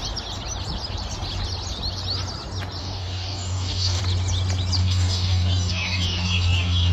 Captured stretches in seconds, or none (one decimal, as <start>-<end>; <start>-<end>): 0.0-2.8; 4.0-4.8